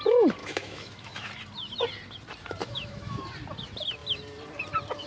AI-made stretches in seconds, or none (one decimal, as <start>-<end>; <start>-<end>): 0.4-1.3; 2.6-3.2